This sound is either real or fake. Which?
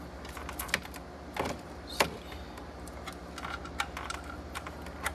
real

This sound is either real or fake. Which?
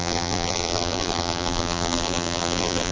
fake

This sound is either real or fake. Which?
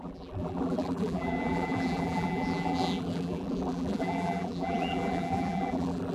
fake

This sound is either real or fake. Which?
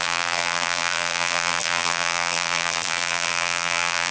fake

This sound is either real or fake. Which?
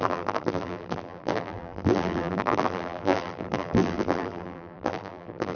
fake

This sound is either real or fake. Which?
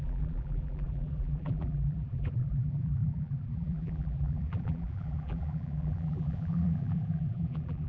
fake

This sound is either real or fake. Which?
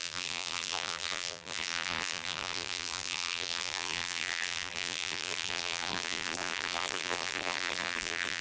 fake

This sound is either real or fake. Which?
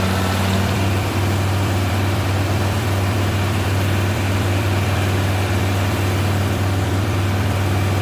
fake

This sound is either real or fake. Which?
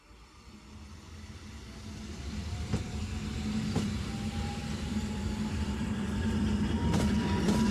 fake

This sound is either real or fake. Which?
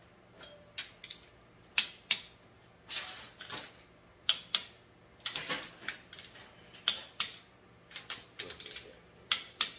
real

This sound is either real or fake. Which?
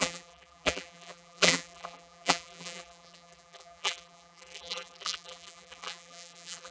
fake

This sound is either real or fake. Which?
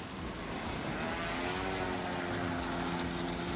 real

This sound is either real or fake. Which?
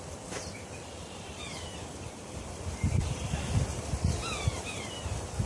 fake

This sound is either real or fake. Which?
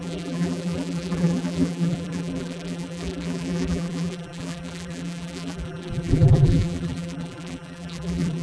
fake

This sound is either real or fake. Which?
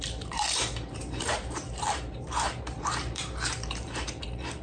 fake